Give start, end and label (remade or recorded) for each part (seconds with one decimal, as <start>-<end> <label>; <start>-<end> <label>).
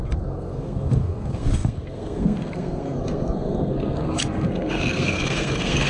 0.0-5.9 remade